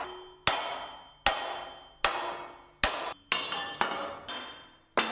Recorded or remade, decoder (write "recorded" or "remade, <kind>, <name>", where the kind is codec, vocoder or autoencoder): recorded